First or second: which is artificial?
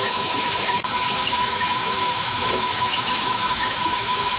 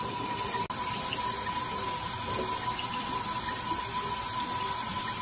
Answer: first